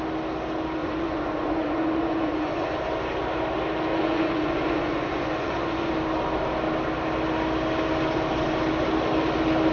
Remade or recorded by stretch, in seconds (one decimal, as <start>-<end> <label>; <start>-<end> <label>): 0.0-0.8 recorded; 0.8-2.8 remade; 2.8-3.9 recorded; 3.9-5.9 remade; 5.9-9.7 recorded